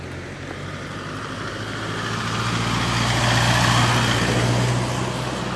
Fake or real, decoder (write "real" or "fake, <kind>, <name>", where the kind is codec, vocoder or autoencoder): real